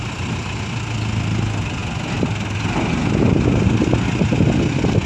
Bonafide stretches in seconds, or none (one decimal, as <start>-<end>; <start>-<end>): 0.0-5.1